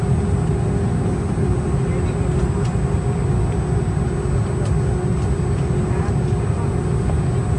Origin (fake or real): real